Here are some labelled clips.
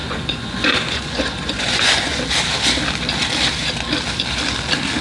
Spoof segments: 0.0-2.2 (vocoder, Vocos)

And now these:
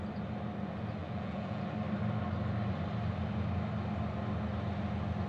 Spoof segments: 1.0-1.6 (vocoder, Vocos)

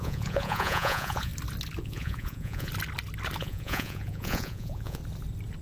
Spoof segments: 0.0-1.3 (vocoder, Vocos); 1.8-2.7; 3.4-5.0

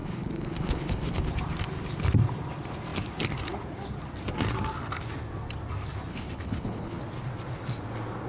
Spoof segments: 0.0-1.3 (codec, HILCodec); 6.1-7.0

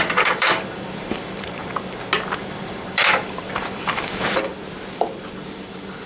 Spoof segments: 0.0-1.6 (vocoder, BigVGAN v2); 2.9-4.5; 5.4-6.1

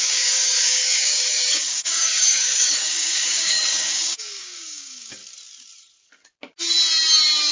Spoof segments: 0.0-5.2 (codec, DAC)

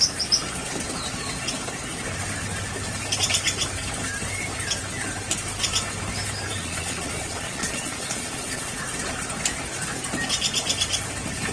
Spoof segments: 6.6-8.8 (vocoder, Vocos)

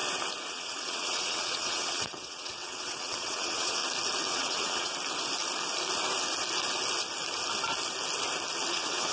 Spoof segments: 0.5-3.8 (vocoder, WaveNeXt); 4.3-4.9; 8.7-9.1